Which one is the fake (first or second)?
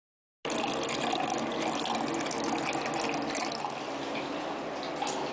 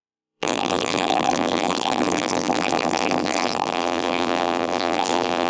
second